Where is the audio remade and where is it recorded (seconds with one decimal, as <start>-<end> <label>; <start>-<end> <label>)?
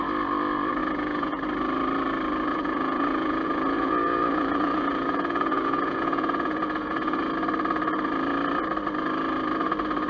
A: 0.0-0.8 recorded; 0.8-1.4 remade; 1.4-2.5 recorded; 2.5-7.3 remade; 7.3-10.1 recorded